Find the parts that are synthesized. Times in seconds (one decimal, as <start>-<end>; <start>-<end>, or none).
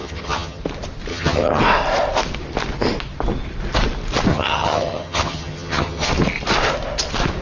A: 0.0-0.6; 1.1-1.6; 4.3-6.1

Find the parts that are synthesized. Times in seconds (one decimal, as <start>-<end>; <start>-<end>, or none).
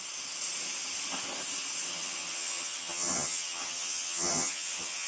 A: 1.9-5.1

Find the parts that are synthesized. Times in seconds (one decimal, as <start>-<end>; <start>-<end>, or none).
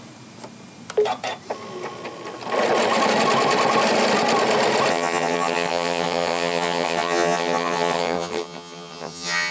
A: 4.9-9.5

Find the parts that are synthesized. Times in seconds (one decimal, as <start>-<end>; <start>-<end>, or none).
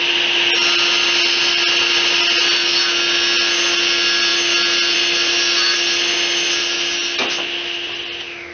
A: none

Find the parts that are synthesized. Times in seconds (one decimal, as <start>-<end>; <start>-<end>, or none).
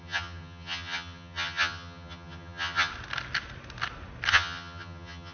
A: 0.0-2.9; 4.3-5.3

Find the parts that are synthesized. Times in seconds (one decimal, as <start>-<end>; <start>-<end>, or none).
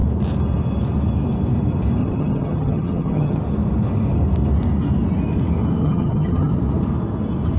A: 2.0-3.4; 5.8-6.5